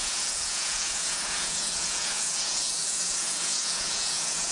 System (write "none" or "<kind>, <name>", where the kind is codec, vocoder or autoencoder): vocoder, Vocos